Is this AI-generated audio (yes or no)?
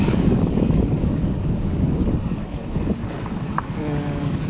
yes